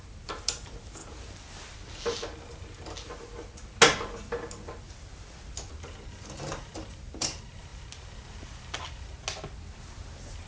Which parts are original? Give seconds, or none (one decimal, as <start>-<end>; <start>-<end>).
0.0-10.5